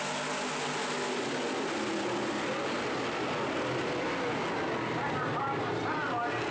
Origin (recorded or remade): recorded